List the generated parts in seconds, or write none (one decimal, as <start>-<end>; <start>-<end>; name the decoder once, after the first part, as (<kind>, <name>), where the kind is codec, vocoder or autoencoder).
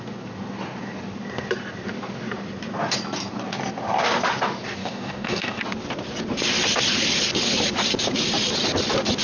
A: 4.8-5.6 (codec, DAC)